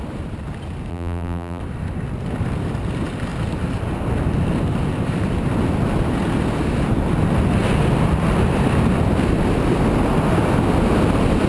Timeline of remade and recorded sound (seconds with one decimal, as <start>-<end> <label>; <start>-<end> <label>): 0.0-0.9 recorded; 0.9-1.6 remade; 1.6-11.5 recorded